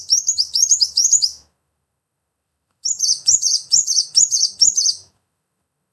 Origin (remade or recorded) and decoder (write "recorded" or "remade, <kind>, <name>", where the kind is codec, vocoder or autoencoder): remade, autoencoder, DAC-VAE